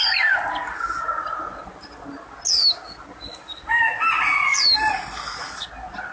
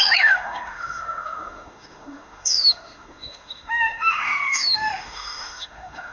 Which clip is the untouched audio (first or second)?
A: first